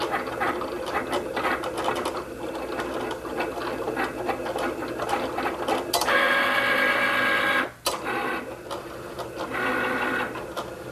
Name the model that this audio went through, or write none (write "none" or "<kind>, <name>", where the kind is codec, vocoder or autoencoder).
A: none